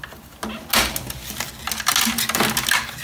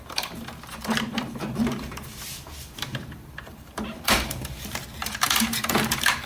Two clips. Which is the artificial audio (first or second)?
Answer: second